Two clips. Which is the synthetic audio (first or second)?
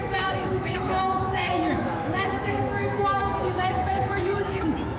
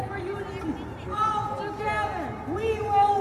first